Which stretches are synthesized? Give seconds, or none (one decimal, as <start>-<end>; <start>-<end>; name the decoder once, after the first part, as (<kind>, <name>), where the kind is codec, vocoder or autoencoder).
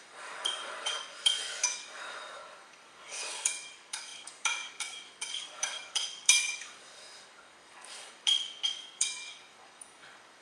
0.0-10.4 (codec, DAC)